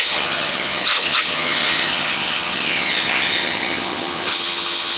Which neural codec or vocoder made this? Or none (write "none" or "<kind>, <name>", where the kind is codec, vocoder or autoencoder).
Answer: vocoder, HiFi-GAN